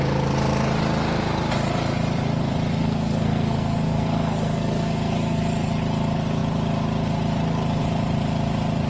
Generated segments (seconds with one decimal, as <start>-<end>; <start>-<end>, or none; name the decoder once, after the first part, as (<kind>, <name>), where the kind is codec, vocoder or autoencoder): 2.8-5.4 (codec, SNAC)